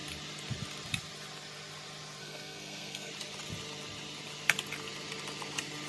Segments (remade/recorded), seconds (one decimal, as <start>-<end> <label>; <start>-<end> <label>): 0.0-2.2 recorded; 2.2-3.1 remade; 3.1-5.9 recorded

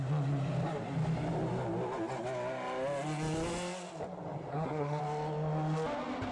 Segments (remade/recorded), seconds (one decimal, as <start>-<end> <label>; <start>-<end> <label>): 0.0-4.5 recorded; 4.5-5.0 remade; 5.0-6.3 recorded